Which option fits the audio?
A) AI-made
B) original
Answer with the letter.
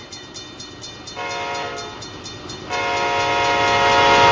B